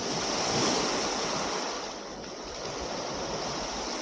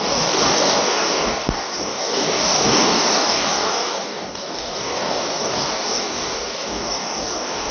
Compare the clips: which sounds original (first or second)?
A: first